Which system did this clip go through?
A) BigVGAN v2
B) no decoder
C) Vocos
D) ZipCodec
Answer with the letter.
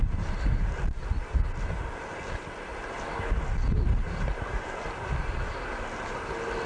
B